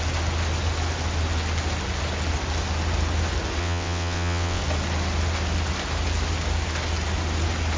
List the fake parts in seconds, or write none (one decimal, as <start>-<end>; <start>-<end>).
3.6-4.6